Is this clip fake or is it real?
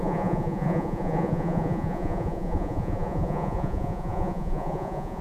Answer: fake